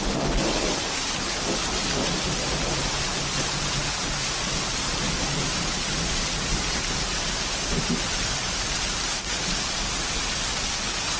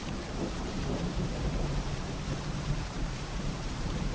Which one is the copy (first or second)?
second